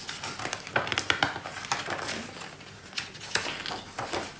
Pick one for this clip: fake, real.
real